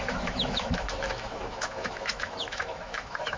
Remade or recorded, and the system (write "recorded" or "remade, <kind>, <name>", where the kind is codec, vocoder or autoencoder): remade, autoencoder, DAC-VAE